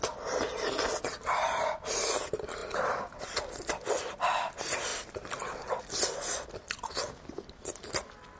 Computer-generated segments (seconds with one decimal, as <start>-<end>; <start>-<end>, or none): none